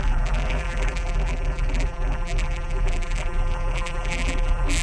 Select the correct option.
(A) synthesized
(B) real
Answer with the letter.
A